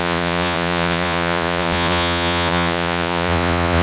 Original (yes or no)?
no